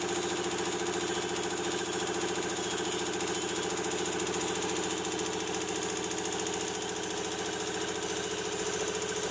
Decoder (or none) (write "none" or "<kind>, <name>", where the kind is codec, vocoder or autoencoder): none